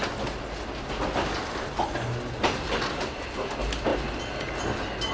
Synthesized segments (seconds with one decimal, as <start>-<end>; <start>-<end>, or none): none